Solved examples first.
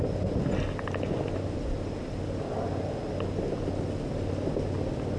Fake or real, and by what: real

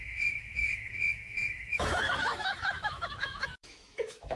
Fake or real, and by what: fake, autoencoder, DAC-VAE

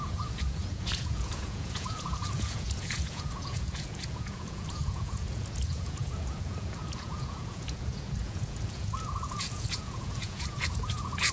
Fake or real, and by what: fake, vocoder, Vocos